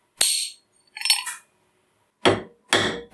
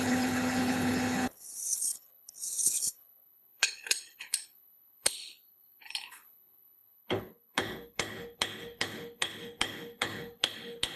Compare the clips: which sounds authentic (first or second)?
first